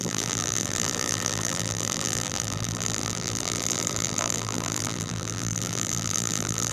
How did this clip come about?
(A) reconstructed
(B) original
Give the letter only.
A